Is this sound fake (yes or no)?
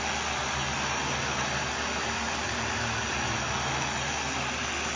no